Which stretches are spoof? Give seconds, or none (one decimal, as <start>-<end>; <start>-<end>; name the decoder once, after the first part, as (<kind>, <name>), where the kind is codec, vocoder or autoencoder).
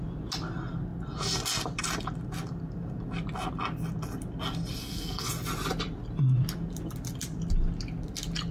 4.8-5.3 (codec, SNAC)